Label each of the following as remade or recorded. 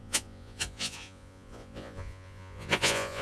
remade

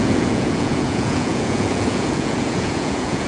remade